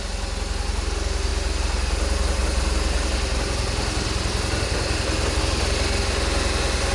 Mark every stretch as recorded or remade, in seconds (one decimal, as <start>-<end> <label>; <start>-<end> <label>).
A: 0.0-6.9 recorded